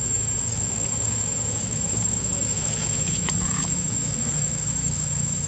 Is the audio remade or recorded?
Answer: remade